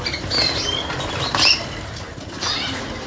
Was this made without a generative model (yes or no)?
yes